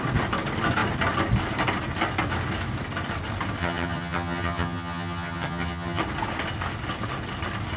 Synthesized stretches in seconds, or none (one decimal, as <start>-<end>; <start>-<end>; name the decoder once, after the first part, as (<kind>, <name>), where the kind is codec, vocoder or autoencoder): 3.6-6.0 (vocoder, HiFi-GAN)